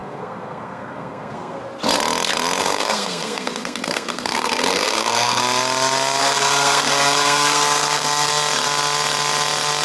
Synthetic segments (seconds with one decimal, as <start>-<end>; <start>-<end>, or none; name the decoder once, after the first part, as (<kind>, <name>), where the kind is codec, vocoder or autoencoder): 0.0-1.6 (codec, SNAC); 2.6-5.4; 6.2-8.3